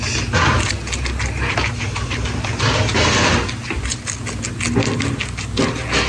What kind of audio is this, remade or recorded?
recorded